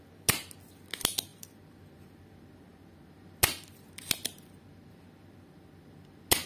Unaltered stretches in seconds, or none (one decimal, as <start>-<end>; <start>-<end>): 0.0-1.3; 2.2-6.5